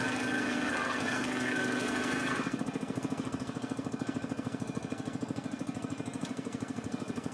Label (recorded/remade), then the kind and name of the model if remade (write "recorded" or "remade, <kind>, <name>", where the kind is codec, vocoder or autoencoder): remade, codec, SNAC